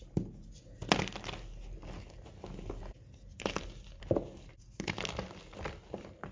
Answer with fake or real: real